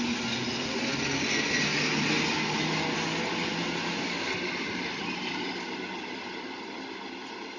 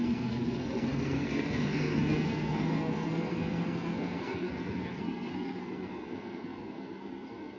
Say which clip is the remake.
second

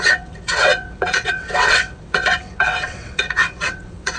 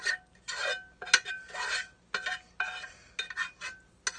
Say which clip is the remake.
first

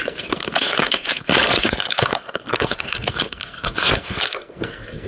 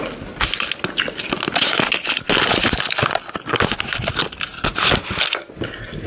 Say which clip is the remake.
first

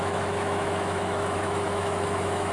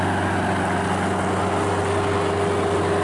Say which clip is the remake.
first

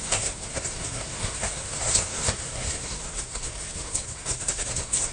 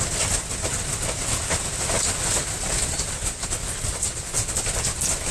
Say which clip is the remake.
first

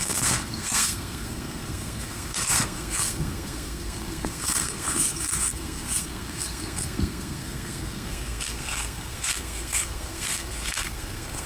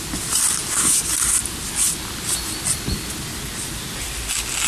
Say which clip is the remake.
first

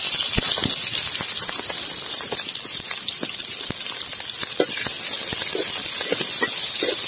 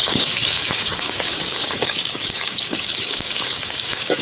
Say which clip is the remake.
second